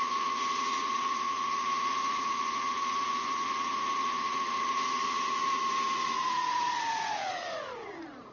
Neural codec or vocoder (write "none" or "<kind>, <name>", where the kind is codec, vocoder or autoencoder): vocoder, Vocos